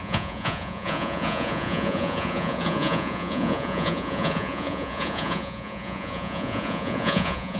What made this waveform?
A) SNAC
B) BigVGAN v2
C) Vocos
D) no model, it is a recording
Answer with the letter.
C